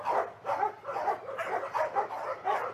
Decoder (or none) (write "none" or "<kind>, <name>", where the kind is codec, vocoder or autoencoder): vocoder, BigVGAN v2